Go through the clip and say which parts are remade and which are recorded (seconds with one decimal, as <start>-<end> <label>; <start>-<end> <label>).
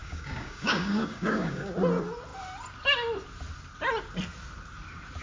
0.0-1.7 remade; 1.7-5.2 recorded